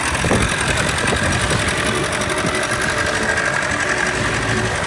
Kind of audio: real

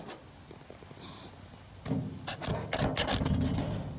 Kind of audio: real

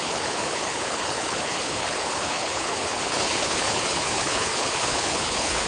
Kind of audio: fake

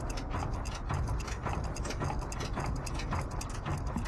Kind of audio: real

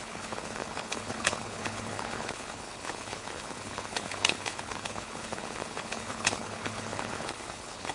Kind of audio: fake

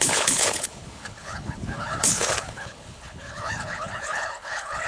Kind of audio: fake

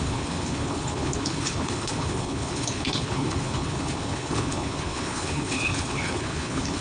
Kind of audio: fake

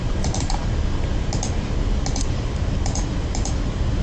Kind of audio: real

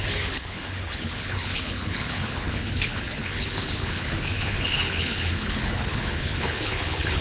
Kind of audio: fake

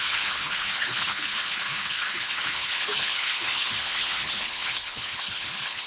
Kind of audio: fake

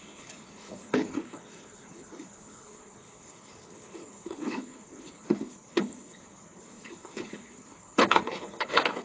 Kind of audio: fake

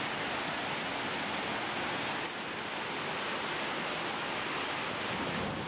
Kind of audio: real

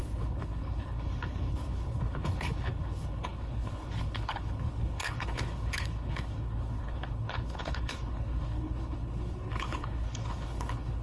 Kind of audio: fake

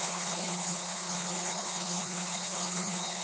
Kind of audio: fake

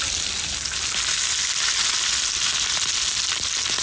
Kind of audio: real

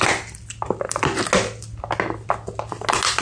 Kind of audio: real